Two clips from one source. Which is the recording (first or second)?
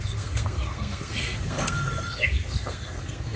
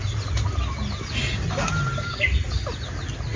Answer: second